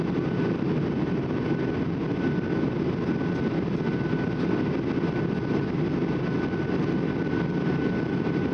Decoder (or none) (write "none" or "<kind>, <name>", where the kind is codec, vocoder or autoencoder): none